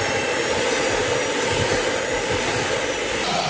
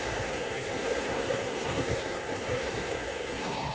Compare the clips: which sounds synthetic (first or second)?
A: second